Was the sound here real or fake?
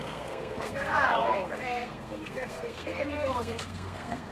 fake